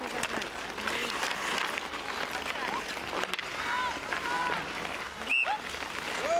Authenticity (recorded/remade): recorded